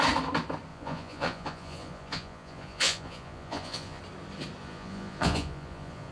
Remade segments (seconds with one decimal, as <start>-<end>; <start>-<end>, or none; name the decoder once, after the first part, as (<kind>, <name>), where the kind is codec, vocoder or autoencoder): 0.7-4.0 (vocoder, Vocos); 4.6-6.1